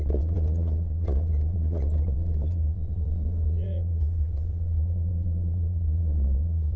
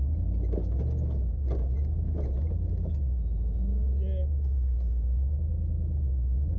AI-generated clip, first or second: first